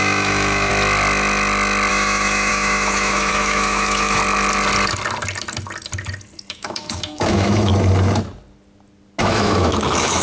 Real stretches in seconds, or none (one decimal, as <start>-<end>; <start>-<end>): 0.7-1.9; 4.2-6.5; 7.7-9.2